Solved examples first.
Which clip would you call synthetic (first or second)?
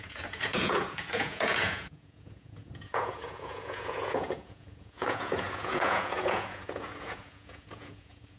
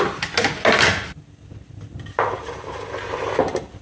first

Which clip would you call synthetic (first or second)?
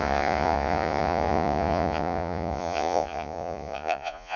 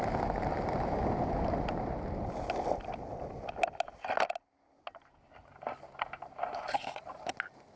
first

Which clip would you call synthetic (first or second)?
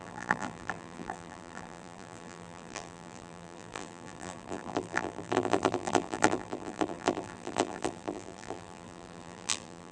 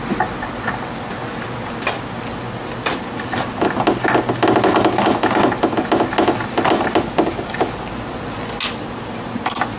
first